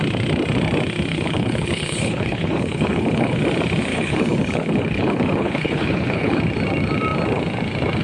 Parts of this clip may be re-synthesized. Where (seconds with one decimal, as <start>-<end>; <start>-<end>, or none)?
1.1-3.4; 3.9-6.4